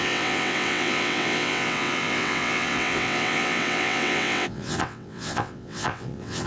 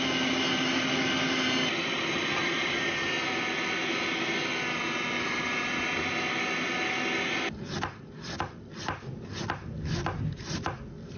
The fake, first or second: first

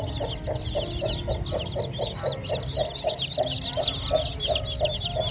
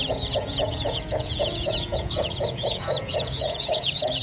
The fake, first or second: second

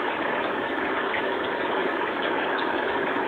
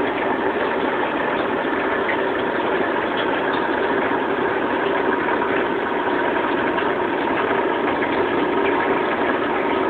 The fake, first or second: first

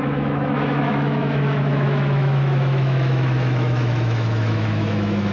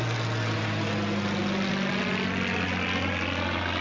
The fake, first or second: first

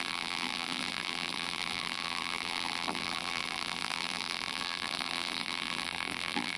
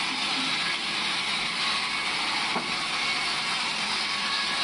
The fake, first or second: first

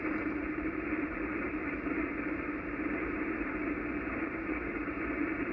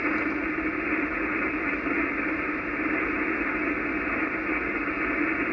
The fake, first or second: first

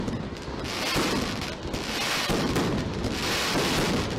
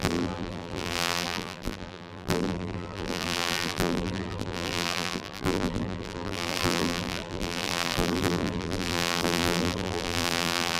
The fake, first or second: second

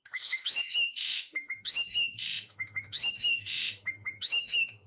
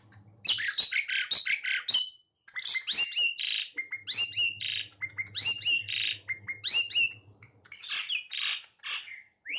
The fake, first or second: first